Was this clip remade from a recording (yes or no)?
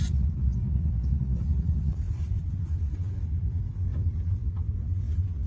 no